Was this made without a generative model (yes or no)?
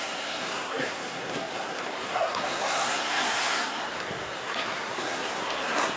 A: no